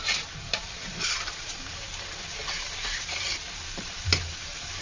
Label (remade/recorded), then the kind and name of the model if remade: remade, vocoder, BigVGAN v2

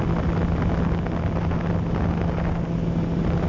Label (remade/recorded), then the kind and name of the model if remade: recorded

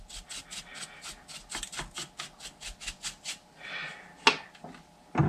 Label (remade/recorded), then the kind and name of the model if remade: recorded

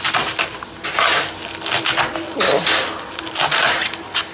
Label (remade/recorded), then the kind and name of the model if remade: recorded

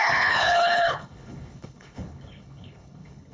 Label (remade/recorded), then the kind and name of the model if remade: remade, codec, HILCodec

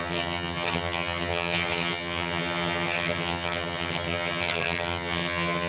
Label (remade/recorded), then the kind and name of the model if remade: remade, vocoder, HiFi-GAN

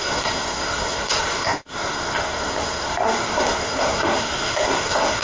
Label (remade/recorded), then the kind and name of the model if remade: remade, codec, SNAC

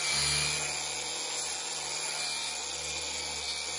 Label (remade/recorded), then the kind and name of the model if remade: recorded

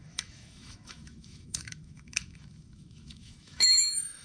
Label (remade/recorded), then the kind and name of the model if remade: remade, autoencoder, DAC-VAE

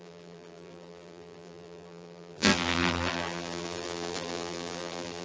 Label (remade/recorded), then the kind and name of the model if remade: remade, vocoder, BigVGAN v2